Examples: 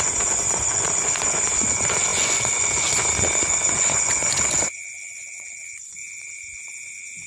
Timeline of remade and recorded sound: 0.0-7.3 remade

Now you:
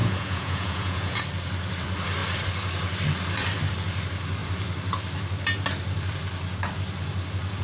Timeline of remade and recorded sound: 0.0-1.2 remade; 1.2-7.6 recorded

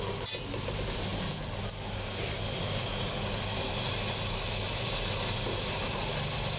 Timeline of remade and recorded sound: 0.0-6.6 recorded